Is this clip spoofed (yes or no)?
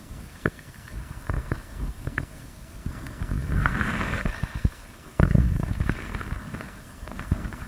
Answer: yes